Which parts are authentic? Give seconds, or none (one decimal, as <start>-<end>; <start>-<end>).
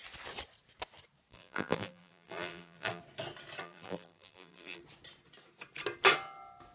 0.0-1.3; 3.0-3.6; 4.8-6.7